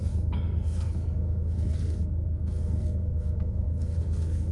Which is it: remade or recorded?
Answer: remade